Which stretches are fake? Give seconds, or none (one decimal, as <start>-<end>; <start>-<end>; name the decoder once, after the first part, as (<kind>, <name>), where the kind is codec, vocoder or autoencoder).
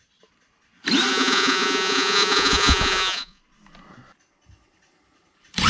1.1-3.4 (vocoder, Vocos)